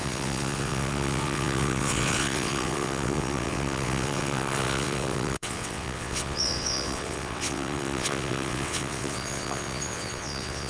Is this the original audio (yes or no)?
no